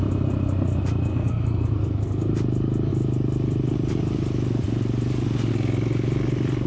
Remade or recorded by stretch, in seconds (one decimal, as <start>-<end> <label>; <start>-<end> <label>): 0.0-1.1 recorded; 1.1-2.3 remade; 2.3-6.7 recorded